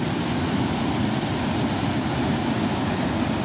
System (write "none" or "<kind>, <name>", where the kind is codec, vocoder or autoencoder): none